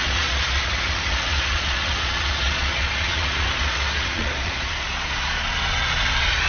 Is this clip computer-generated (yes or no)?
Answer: yes